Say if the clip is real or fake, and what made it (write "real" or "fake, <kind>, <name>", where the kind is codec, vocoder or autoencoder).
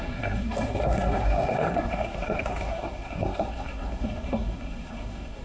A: fake, codec, SNAC